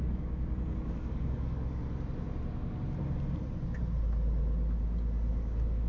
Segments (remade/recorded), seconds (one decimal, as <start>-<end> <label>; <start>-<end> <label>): 0.0-1.8 remade; 1.8-5.3 recorded; 5.3-5.9 remade